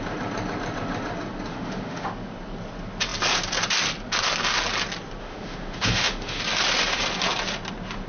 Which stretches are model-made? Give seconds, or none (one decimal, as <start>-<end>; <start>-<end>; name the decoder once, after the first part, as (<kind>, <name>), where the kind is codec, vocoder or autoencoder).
1.5-2.1 (autoencoder, DAC-VAE); 5.2-6.4